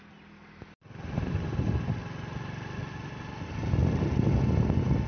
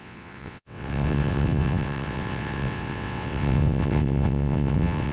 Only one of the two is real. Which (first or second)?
first